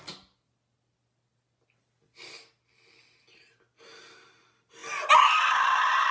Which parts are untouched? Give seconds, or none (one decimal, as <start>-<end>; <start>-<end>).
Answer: 0.0-6.1

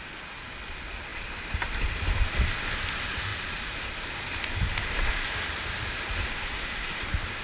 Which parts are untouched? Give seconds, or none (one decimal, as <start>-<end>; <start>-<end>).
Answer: 0.0-7.4

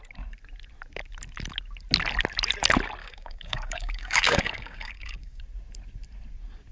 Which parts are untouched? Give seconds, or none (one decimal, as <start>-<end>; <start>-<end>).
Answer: 0.0-3.0; 5.4-6.7

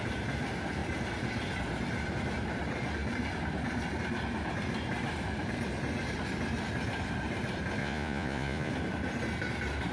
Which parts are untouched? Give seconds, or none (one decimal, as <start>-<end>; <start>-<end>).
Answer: 0.0-7.8; 8.7-9.9

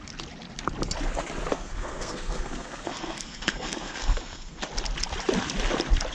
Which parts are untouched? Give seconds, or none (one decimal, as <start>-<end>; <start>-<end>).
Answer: 0.0-1.5; 4.6-6.1